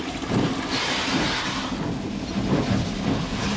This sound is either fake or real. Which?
real